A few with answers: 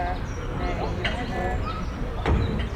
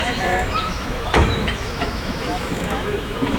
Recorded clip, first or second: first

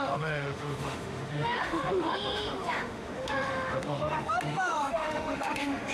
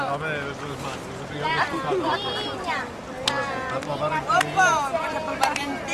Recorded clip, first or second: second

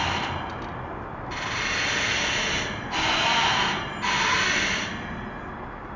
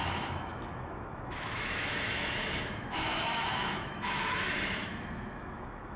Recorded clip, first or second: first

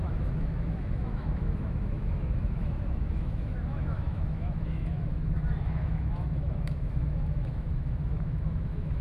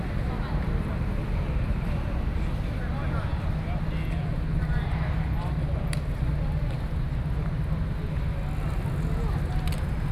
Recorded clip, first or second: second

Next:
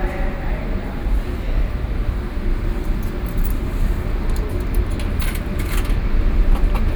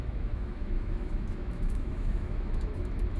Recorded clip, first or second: first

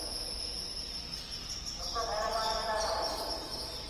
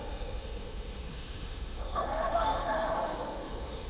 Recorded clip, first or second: first